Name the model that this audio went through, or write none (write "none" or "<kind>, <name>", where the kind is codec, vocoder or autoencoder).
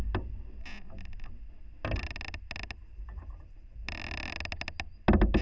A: none